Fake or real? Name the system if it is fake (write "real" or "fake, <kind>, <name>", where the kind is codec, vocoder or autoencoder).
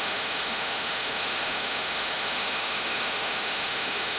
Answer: fake, autoencoder, DAC-VAE